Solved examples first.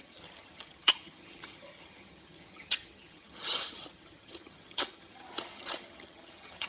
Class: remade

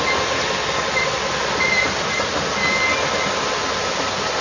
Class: recorded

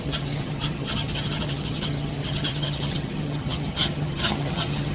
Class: remade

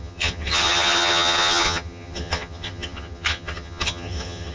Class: remade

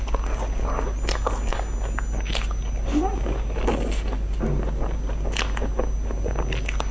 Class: recorded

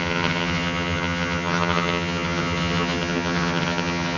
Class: remade